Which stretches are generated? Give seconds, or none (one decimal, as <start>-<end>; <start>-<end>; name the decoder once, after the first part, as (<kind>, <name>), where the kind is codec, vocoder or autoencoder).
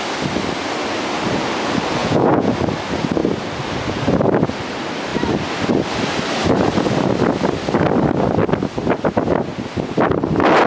2.0-2.5 (vocoder, Vocos)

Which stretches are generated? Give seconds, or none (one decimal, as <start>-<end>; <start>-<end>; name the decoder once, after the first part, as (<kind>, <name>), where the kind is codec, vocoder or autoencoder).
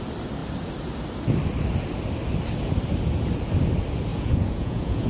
4.1-5.1 (vocoder, Vocos)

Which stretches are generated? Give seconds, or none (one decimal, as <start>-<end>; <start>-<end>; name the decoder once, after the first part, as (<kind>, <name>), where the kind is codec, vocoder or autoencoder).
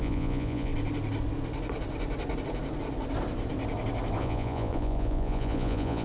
0.0-0.7 (vocoder, Vocos); 4.2-6.0